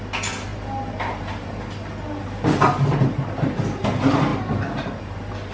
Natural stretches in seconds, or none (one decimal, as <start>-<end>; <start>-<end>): 0.0-5.5